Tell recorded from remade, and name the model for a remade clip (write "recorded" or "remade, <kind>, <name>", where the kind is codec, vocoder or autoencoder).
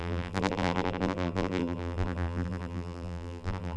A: remade, vocoder, BigVGAN v2